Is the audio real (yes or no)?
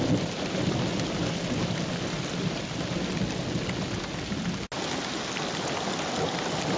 yes